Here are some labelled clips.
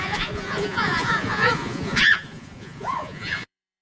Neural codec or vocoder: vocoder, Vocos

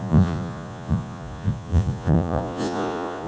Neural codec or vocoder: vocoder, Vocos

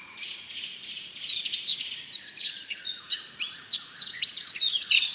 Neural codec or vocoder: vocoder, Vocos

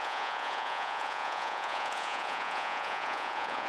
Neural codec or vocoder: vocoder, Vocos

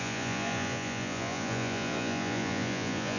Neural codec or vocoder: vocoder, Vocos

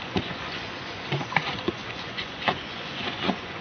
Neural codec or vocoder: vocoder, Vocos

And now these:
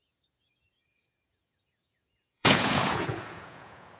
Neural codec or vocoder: vocoder, Vocos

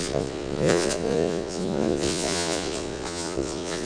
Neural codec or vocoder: vocoder, Vocos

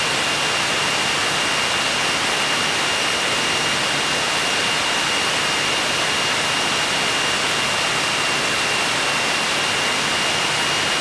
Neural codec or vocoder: none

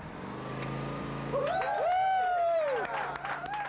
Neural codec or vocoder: none